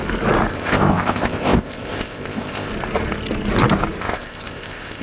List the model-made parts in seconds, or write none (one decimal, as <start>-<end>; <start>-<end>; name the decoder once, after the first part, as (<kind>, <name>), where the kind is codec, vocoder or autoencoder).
0.5-2.7 (codec, ZipCodec); 4.0-5.0